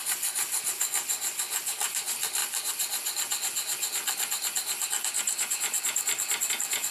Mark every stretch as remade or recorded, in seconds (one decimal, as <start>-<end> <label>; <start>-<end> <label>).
0.0-6.9 recorded